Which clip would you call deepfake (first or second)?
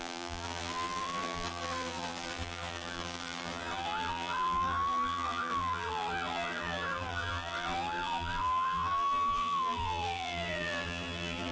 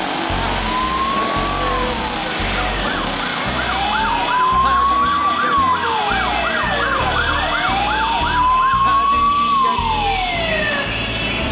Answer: first